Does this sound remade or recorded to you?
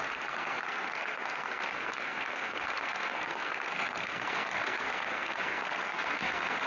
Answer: remade